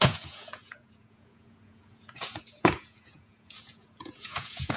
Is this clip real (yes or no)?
no